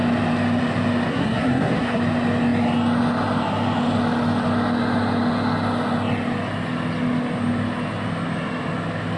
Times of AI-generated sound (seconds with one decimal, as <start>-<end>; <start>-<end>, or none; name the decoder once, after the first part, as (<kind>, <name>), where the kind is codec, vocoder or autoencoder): 1.1-2.0 (codec, SNAC)